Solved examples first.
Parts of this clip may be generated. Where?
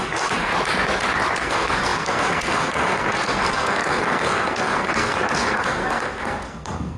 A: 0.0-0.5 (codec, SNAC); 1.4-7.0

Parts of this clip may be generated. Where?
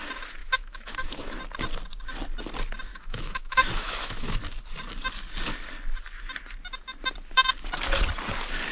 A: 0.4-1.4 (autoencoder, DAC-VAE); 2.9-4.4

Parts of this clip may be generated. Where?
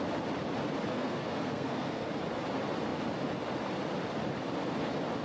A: 0.9-2.1 (codec, SNAC)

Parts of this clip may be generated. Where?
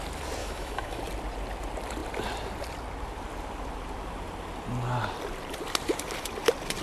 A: 0.4-1.0 (autoencoder, DAC-VAE)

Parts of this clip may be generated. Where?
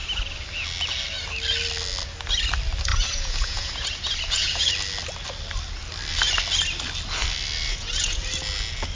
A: 2.9-4.7 (vocoder, Vocos); 7.7-8.2